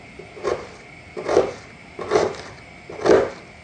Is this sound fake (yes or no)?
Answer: no